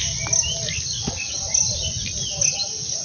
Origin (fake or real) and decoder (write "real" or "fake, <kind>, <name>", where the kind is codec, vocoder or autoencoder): real